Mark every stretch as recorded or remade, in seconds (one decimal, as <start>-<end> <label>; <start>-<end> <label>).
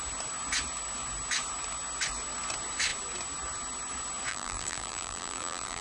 0.0-4.3 recorded; 4.3-5.8 remade